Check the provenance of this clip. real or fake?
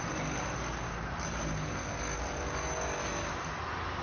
real